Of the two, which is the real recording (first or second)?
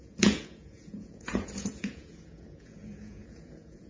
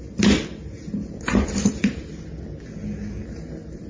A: second